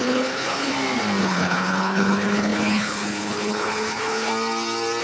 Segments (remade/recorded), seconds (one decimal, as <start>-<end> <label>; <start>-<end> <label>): 0.0-0.7 remade; 0.7-1.2 recorded; 1.2-4.3 remade; 4.3-5.0 recorded